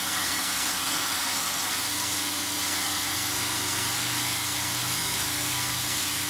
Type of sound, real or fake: fake